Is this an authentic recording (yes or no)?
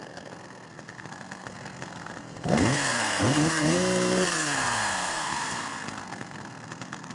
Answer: no